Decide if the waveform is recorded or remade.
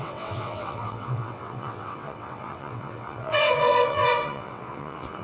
remade